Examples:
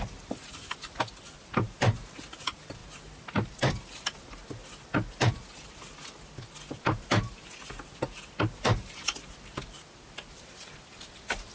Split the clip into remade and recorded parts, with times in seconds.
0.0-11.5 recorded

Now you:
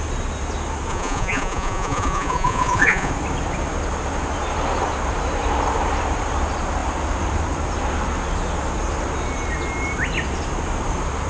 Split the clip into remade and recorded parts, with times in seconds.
0.0-0.9 recorded; 0.9-3.1 remade; 3.1-11.3 recorded

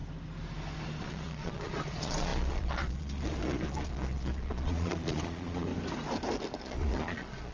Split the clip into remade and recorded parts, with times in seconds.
0.0-1.0 recorded; 1.0-5.7 remade; 5.7-6.6 recorded; 6.6-7.5 remade

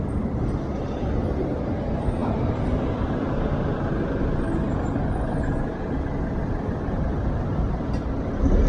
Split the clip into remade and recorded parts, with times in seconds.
0.0-8.7 recorded

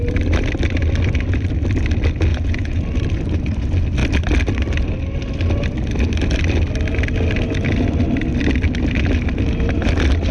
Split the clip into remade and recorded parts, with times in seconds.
0.0-2.3 recorded; 2.3-2.8 remade; 2.8-10.3 recorded

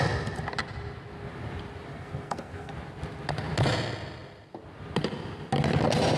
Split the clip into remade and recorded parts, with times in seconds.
0.0-1.9 recorded; 1.9-2.7 remade; 2.7-6.2 recorded

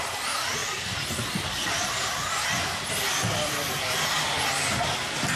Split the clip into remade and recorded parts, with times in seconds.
0.0-5.4 recorded